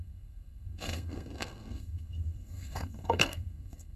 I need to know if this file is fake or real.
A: fake